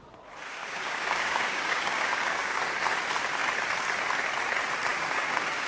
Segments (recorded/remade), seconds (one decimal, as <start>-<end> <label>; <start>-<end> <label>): 0.0-0.6 recorded; 0.6-2.6 remade; 2.6-4.9 recorded; 4.9-5.7 remade